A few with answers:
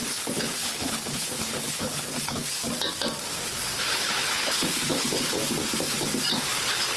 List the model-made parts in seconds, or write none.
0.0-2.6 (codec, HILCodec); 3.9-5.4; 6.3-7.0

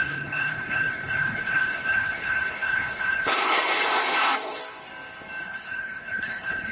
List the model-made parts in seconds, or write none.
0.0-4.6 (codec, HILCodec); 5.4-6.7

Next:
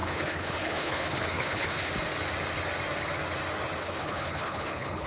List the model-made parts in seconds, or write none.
0.0-1.9 (codec, HILCodec); 3.8-5.1

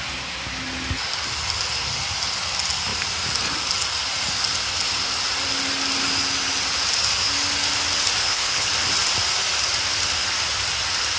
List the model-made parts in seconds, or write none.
8.2-8.7 (codec, HILCodec)

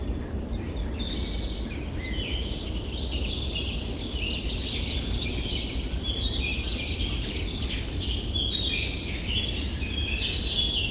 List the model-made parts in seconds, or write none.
none

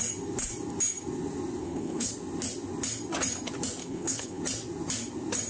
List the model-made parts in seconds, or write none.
1.6-2.1 (codec, HILCodec); 3.8-4.4

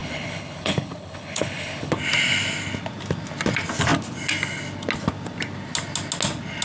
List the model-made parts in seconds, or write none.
0.0-1.9 (codec, HILCodec)